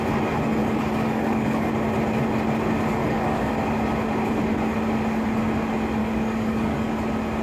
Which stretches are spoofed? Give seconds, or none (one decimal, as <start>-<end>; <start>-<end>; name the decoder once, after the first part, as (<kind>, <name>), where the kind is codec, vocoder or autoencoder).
0.6-1.7 (codec, DAC); 3.0-3.5; 6.0-6.9